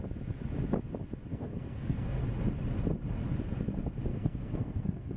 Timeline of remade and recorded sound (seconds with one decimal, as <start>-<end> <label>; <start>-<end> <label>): 0.0-1.3 recorded; 1.3-2.2 remade; 2.2-4.1 recorded; 4.1-5.2 remade